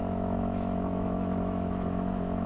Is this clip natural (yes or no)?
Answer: no